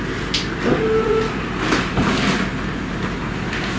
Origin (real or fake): real